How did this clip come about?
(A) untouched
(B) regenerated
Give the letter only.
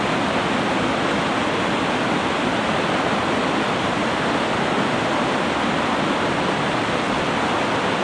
A